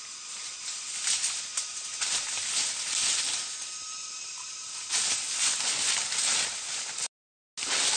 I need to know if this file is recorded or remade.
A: recorded